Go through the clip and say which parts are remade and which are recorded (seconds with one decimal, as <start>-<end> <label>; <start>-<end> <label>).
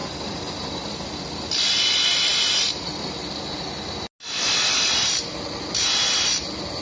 0.0-6.8 recorded